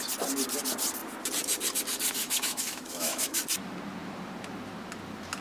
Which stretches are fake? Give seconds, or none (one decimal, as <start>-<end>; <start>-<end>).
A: 2.2-3.4